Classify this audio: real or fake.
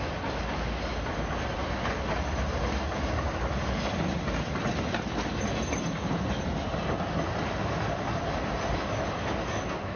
real